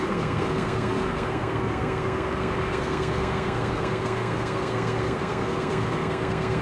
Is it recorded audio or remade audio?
remade